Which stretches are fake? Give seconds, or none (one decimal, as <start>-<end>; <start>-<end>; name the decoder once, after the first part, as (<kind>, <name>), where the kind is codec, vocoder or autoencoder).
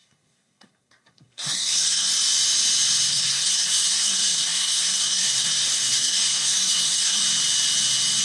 0.0-2.1 (codec, SNAC); 3.1-7.2